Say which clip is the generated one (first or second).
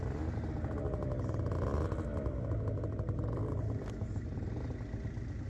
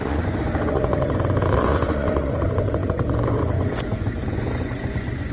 second